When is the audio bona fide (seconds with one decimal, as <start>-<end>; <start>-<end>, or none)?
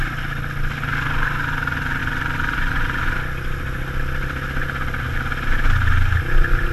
0.0-6.7